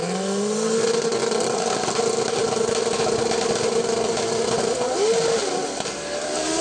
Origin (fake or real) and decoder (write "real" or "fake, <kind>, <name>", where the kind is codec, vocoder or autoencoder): real